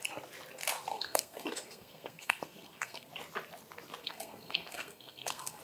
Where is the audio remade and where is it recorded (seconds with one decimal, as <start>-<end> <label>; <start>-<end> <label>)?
0.0-0.9 recorded; 0.9-3.1 remade; 3.1-4.0 recorded; 4.0-5.6 remade